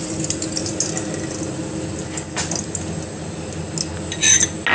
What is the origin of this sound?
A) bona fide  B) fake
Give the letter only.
A